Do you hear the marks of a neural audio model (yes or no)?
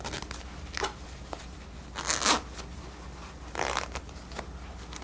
no